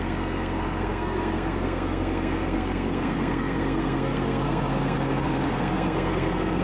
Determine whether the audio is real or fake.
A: fake